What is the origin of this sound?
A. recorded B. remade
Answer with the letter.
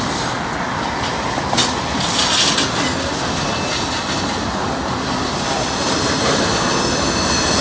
A